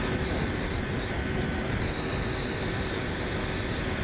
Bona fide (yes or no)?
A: yes